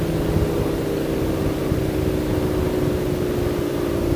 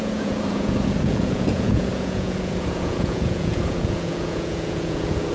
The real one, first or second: first